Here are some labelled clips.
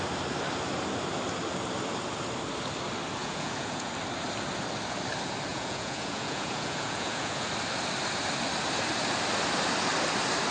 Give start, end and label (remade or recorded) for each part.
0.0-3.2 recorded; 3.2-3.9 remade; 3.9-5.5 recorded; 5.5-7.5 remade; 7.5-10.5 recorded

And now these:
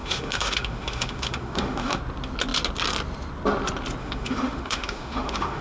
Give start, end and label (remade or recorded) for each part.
0.0-2.0 remade; 2.0-4.0 recorded; 4.0-5.6 remade

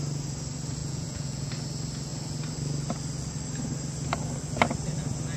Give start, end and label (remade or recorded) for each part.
0.0-0.8 recorded; 0.8-1.5 remade; 1.5-5.4 recorded

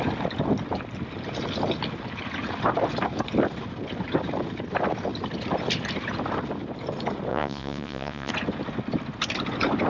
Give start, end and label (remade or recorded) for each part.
0.0-7.3 recorded; 7.3-8.3 remade; 8.3-9.9 recorded

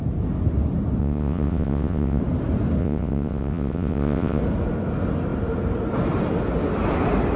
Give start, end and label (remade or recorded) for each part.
0.0-1.0 recorded; 1.0-2.2 remade; 2.2-2.8 recorded; 2.8-4.4 remade; 4.4-7.4 recorded

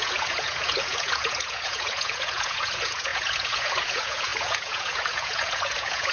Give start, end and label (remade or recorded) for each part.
0.0-6.1 remade

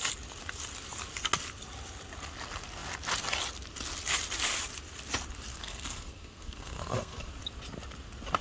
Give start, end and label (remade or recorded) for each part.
0.0-5.5 recorded; 5.5-7.3 remade; 7.3-8.4 recorded